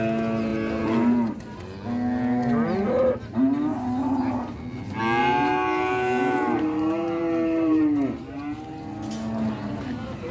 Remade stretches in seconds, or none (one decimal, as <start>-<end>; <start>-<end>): 5.2-7.8